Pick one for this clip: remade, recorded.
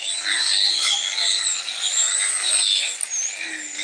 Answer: recorded